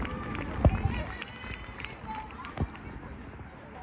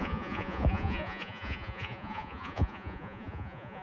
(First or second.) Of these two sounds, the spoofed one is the second